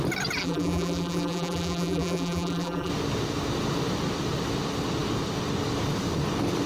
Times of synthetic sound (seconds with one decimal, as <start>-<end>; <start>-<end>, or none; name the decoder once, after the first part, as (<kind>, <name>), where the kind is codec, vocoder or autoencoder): 0.4-2.9 (vocoder, BigVGAN v2)